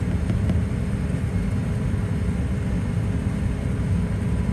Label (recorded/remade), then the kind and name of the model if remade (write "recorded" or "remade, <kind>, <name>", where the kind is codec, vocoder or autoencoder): recorded